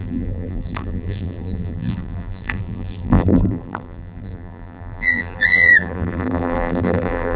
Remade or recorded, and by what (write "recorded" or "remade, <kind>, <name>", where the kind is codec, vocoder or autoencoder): remade, vocoder, BigVGAN v2